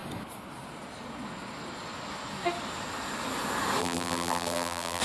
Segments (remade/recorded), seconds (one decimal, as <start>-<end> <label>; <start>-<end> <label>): 0.0-3.8 recorded; 3.8-5.0 remade